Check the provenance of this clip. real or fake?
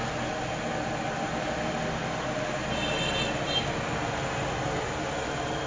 real